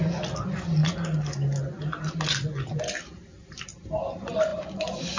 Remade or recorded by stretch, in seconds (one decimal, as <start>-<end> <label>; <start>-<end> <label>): 0.0-5.2 recorded